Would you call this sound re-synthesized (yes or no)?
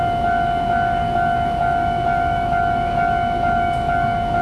yes